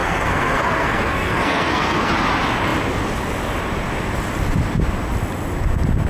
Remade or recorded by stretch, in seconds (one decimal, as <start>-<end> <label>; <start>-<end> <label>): 0.0-2.1 remade; 2.1-6.1 recorded